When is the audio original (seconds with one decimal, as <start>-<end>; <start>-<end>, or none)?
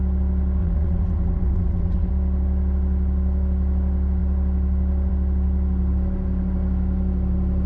0.0-0.6; 2.1-7.7